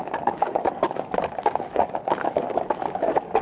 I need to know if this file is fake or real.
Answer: fake